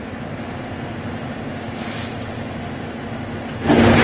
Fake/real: real